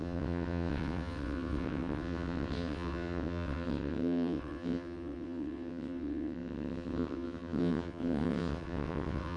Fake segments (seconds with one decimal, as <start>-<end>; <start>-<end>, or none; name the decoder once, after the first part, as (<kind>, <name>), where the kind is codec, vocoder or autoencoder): 0.0-9.4 (vocoder, WaveNeXt)